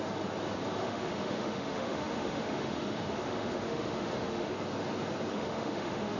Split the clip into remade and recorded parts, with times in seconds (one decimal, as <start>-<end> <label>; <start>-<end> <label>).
0.0-0.8 recorded; 0.8-4.5 remade; 4.5-5.3 recorded; 5.3-6.2 remade